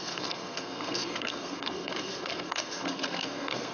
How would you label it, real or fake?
fake